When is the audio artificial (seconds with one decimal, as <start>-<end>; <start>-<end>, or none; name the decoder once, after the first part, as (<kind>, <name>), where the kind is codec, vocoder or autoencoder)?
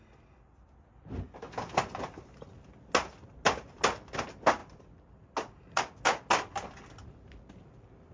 none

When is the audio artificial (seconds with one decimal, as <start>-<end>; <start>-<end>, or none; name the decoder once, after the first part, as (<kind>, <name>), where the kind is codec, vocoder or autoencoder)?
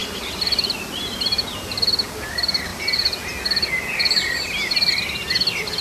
0.0-0.8 (vocoder, BigVGAN v2); 2.7-3.2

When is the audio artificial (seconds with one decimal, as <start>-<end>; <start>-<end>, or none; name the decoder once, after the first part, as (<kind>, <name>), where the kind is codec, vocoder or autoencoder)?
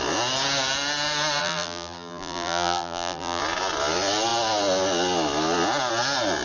1.4-3.4 (vocoder, BigVGAN v2)